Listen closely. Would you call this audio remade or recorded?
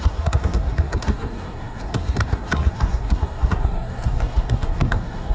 remade